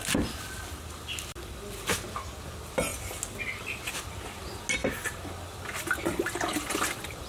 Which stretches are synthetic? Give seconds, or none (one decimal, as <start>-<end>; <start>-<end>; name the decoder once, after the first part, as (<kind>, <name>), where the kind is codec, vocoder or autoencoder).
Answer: none